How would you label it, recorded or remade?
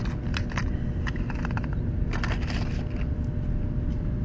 recorded